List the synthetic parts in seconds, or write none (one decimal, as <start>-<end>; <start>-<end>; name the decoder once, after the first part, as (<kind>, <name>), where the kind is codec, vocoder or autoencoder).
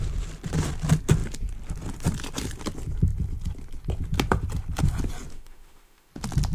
5.3-6.1 (autoencoder, DAC-VAE)